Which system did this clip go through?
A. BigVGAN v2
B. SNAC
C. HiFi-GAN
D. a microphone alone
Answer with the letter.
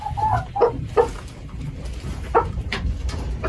A